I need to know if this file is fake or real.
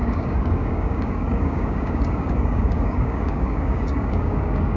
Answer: fake